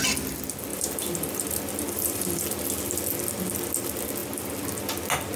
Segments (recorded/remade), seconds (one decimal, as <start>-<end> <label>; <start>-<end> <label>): 0.0-0.7 recorded; 0.7-3.0 remade; 3.0-4.2 recorded; 4.2-4.8 remade; 4.8-5.4 recorded